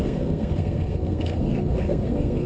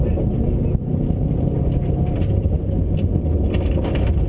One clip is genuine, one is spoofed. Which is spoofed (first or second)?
first